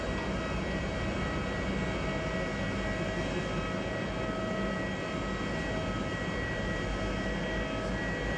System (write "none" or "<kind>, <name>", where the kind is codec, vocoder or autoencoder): none